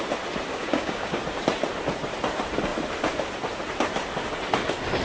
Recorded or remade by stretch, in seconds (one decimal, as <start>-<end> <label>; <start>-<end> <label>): 0.0-0.5 recorded; 0.5-1.2 remade; 1.2-5.0 recorded

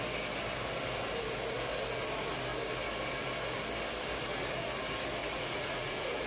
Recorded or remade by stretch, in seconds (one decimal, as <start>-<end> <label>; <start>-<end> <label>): 0.0-5.2 recorded; 5.2-6.3 remade

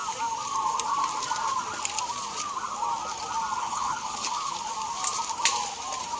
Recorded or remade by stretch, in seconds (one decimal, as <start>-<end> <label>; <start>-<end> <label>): 0.0-3.6 recorded; 3.6-4.3 remade; 4.3-6.2 recorded

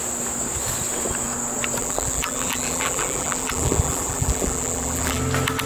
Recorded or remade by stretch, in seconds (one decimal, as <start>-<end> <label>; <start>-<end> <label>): 0.0-1.8 recorded; 1.8-5.2 remade; 5.2-5.7 recorded